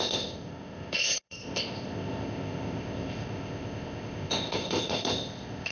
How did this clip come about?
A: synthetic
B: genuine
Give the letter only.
A